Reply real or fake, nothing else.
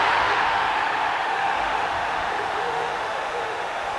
fake